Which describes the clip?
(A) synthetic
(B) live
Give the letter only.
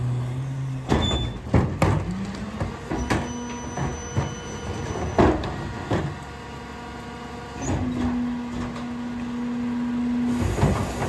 B